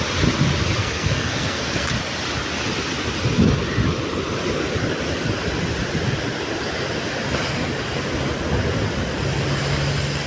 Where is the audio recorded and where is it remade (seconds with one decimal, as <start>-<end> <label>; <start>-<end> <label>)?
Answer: 0.0-0.8 recorded; 0.8-1.9 remade; 1.9-10.3 recorded

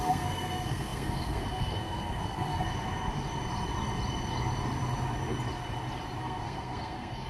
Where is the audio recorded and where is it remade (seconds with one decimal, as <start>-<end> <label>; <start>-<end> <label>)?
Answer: 0.0-2.7 remade; 2.7-6.2 recorded; 6.2-7.3 remade

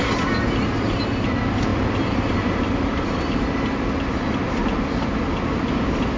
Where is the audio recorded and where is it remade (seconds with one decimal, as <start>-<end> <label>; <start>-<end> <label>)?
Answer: 0.0-1.7 recorded; 1.7-5.4 remade; 5.4-6.2 recorded

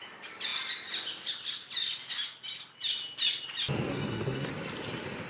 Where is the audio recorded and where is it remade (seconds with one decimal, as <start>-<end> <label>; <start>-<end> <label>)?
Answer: 0.0-3.9 recorded; 3.9-4.5 remade; 4.5-5.3 recorded

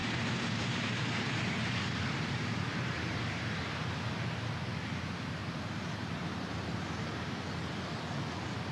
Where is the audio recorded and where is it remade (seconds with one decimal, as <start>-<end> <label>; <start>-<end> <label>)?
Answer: 0.0-3.6 remade; 3.6-5.4 recorded; 5.4-7.6 remade; 7.6-8.7 recorded

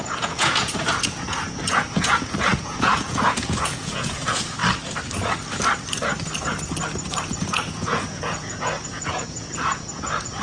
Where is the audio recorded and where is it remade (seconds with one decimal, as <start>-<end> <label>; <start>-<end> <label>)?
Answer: 0.0-4.6 remade; 4.6-7.3 recorded; 7.3-10.4 remade

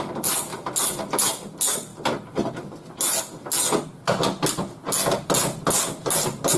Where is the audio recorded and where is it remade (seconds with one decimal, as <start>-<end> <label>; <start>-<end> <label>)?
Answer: 0.0-6.6 recorded

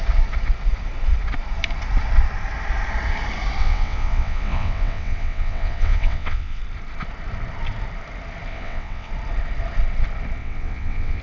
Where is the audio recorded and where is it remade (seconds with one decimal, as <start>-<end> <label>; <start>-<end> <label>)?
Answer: 0.0-3.6 recorded; 3.6-6.6 remade; 6.6-8.5 recorded; 8.5-9.1 remade; 9.1-10.4 recorded; 10.4-11.2 remade